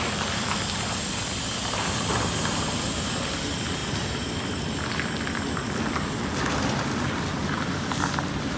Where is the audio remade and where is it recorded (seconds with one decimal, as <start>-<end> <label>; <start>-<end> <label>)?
0.0-8.6 recorded